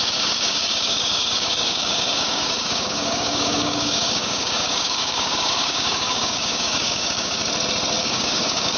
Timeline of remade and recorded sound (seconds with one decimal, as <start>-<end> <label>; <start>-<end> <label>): 0.0-7.4 remade; 7.4-8.0 recorded; 8.0-8.8 remade